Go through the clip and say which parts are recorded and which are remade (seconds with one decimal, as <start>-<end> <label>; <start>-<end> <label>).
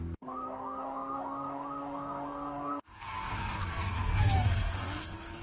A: 0.0-5.4 remade